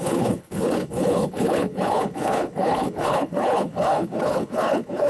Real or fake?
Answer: fake